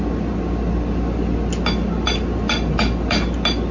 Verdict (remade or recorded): recorded